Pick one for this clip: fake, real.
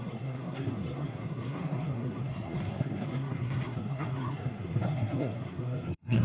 fake